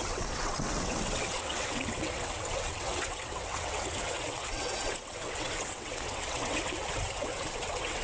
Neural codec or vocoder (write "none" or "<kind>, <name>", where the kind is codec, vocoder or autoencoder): vocoder, WaveNeXt